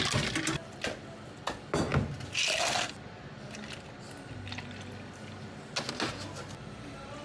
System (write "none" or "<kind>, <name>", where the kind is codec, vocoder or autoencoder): none